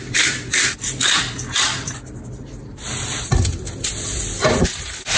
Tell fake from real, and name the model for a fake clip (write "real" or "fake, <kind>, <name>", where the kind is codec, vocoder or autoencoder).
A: fake, vocoder, BigVGAN v2